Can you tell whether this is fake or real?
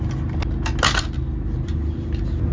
real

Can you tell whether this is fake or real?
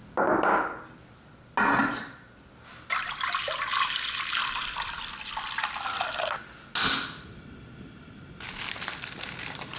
real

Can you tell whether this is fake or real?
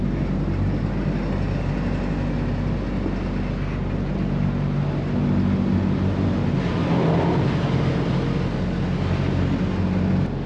real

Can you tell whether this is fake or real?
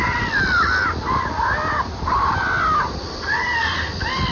real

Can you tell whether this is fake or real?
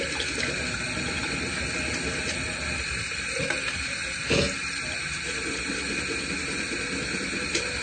real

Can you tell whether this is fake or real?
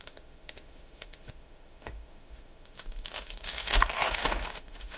fake